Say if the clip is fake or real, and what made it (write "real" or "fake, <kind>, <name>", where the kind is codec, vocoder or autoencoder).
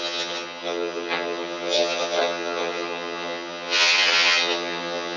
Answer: fake, vocoder, HiFi-GAN